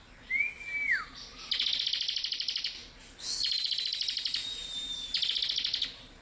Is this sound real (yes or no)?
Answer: yes